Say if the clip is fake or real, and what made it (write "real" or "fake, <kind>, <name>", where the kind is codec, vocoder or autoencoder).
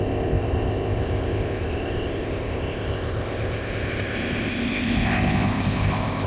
fake, codec, ZipCodec